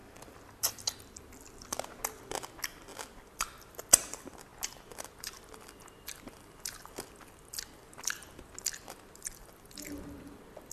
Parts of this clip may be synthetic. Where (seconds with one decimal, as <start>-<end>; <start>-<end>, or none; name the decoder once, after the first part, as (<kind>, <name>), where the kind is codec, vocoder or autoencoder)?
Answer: none

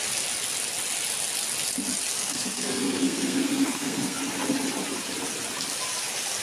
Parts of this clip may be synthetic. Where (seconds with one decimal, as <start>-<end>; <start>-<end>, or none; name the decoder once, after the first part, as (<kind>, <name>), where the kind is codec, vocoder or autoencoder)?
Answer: 2.2-4.2 (codec, SNAC)

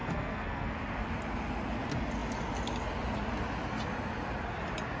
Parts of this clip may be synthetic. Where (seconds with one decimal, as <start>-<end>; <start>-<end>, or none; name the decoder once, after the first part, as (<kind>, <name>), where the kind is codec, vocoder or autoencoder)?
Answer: 0.0-0.7 (codec, SNAC)

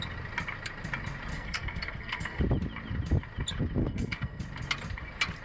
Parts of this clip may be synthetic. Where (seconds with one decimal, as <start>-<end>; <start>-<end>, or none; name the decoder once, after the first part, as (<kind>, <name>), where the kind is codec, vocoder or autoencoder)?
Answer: 1.3-2.4 (codec, SNAC); 3.8-4.4

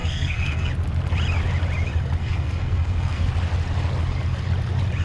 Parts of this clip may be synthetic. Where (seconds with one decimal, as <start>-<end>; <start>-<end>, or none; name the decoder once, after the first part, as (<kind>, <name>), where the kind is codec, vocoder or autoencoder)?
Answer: 0.0-0.7 (codec, SNAC); 2.2-3.3

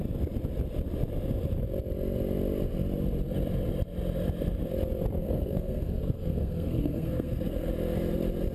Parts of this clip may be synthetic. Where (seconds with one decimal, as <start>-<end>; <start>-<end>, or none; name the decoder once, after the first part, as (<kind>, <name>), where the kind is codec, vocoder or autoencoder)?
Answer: 5.2-7.7 (codec, SNAC)

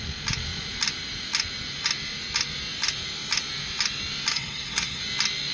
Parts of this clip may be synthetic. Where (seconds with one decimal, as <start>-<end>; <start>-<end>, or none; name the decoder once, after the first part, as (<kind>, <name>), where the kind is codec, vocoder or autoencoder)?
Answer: 4.3-5.0 (codec, SNAC)

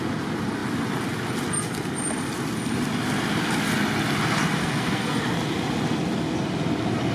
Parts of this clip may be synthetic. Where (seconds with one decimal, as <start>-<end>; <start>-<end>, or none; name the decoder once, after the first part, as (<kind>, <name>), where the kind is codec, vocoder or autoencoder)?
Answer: 4.6-5.2 (codec, SNAC)